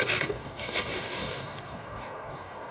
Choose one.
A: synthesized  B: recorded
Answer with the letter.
A